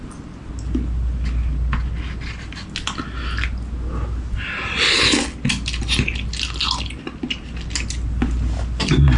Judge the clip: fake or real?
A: real